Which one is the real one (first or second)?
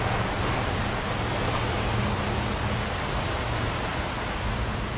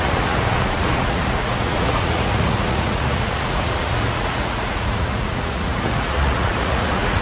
first